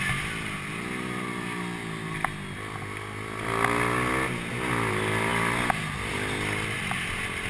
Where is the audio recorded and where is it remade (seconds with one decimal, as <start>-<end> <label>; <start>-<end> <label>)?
0.0-7.5 recorded

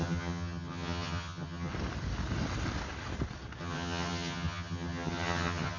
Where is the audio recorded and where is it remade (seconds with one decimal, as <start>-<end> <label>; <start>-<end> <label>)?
0.0-1.7 remade; 1.7-3.6 recorded; 3.6-5.8 remade

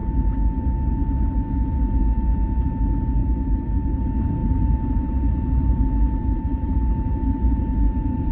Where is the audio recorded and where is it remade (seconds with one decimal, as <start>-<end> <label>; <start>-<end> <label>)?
0.0-3.2 recorded; 3.2-4.0 remade; 4.0-4.4 recorded; 4.4-8.3 remade